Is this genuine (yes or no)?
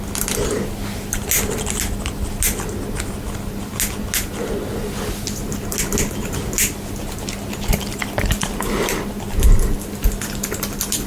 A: yes